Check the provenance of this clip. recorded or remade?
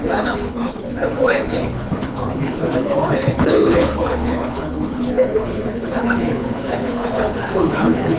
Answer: remade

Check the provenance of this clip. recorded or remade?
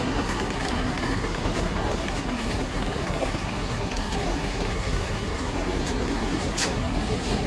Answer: remade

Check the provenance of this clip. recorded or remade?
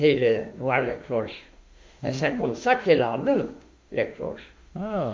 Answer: remade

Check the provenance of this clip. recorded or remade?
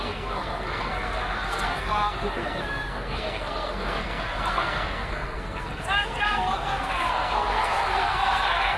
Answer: remade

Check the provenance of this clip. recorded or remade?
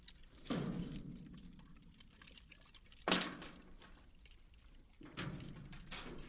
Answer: recorded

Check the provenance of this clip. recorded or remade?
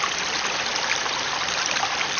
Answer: recorded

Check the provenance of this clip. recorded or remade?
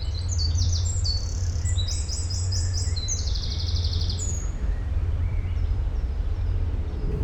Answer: remade